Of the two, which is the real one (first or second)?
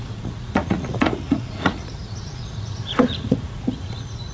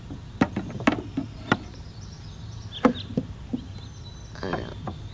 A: second